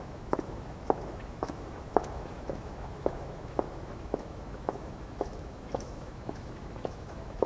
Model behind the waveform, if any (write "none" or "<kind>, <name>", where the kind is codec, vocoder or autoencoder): autoencoder, DAC-VAE